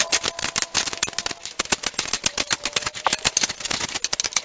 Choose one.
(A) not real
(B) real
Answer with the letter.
B